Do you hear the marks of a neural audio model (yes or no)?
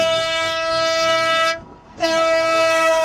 yes